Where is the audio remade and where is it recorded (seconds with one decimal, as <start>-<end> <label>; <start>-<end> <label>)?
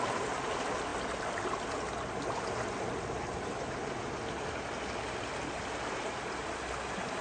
0.0-7.2 recorded